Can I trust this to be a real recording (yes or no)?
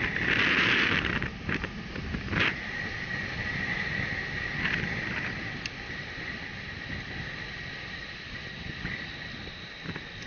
yes